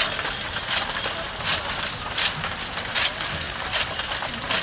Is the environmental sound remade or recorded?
recorded